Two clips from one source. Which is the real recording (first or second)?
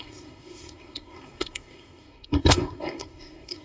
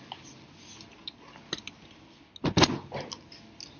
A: second